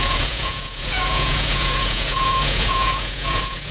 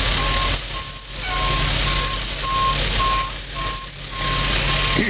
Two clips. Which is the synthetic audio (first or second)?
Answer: first